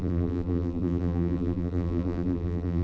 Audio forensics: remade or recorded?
remade